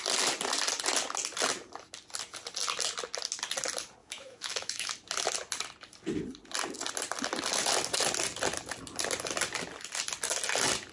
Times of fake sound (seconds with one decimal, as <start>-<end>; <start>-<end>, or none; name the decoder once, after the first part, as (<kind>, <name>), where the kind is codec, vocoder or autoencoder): 4.0-4.9 (autoencoder, DAC-VAE)